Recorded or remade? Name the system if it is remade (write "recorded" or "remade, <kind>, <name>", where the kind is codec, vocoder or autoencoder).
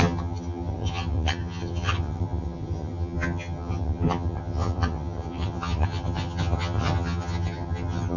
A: remade, vocoder, HiFi-GAN